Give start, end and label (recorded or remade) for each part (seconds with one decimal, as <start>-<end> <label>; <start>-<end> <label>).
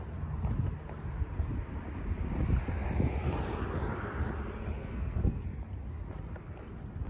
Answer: 0.0-4.8 recorded; 4.8-5.4 remade; 5.4-7.1 recorded